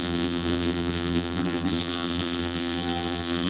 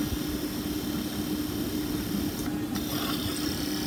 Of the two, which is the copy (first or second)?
first